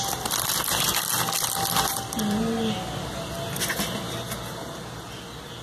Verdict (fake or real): real